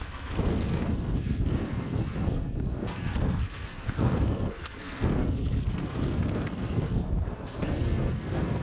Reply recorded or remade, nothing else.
remade